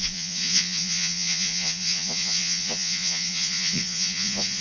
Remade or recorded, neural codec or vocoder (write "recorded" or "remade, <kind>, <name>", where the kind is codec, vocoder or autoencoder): remade, vocoder, Vocos